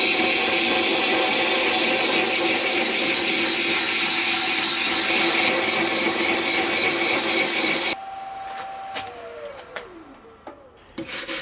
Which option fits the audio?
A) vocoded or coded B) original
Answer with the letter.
B